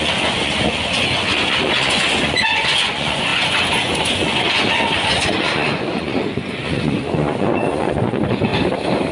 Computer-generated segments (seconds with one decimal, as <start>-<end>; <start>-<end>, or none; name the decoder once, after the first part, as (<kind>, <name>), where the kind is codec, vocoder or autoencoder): 0.0-8.5 (vocoder, Vocos)